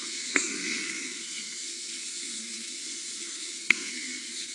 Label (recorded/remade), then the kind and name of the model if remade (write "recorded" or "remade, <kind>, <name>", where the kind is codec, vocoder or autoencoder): remade, codec, SNAC